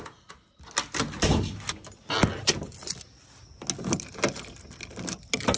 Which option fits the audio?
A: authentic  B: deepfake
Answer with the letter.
A